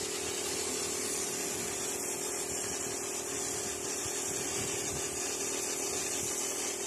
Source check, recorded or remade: recorded